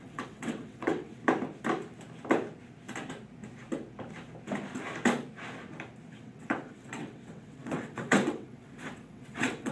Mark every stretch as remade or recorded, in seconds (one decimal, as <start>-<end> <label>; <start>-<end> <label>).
0.0-1.2 remade; 1.2-6.2 recorded; 6.2-9.7 remade